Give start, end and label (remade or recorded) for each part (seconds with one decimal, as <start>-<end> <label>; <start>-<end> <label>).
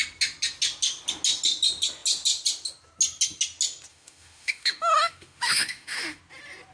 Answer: 0.0-3.9 recorded; 3.9-6.2 remade; 6.2-6.7 recorded